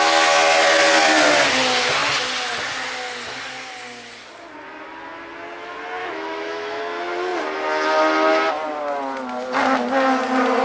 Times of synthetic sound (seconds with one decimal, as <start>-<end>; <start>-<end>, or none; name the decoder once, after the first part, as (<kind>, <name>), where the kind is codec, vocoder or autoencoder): 6.0-6.8 (autoencoder, DAC-VAE)